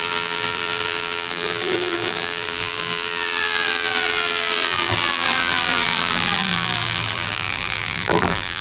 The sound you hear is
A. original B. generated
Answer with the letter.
B